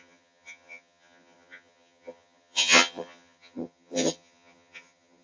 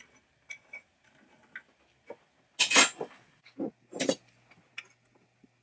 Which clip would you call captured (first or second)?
second